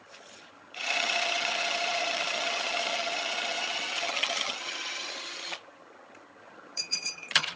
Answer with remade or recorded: remade